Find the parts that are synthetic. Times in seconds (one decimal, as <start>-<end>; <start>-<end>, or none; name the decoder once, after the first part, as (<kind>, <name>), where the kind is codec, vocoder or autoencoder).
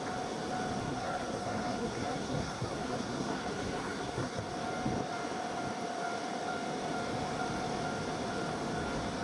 0.8-4.4 (codec, SNAC)